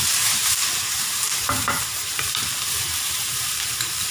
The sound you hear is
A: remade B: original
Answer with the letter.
A